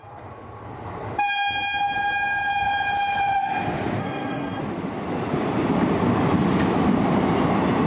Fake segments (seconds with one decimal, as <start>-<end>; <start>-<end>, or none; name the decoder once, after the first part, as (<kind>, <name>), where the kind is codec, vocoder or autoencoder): 4.0-4.6 (codec, SNAC)